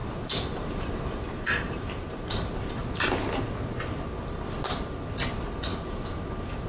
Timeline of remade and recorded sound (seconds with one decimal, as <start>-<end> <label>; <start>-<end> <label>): 0.0-4.0 remade; 4.0-5.7 recorded; 5.7-6.3 remade; 6.3-6.7 recorded

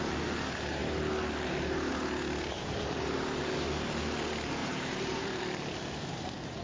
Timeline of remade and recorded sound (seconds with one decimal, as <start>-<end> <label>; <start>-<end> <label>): 0.0-2.5 recorded; 2.5-3.4 remade; 3.4-4.6 recorded; 4.6-5.4 remade; 5.4-6.6 recorded

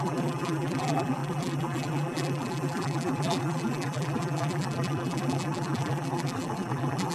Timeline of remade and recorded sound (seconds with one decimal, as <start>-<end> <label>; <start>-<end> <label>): 0.0-7.1 remade

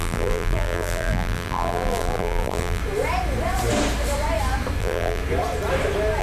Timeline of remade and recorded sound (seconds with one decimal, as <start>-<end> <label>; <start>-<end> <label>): 0.0-2.8 remade; 2.8-4.8 recorded; 4.8-5.2 remade; 5.2-6.2 recorded

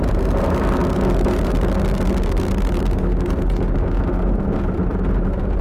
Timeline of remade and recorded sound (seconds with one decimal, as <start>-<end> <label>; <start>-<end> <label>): 0.0-0.8 remade; 0.8-4.2 recorded; 4.2-5.6 remade